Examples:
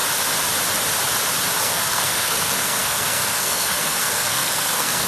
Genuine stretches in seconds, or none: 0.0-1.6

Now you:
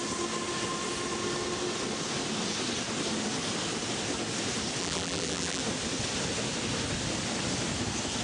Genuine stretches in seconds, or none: 0.0-4.8; 5.6-8.2

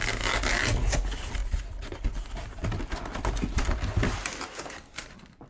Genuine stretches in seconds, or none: 0.0-5.5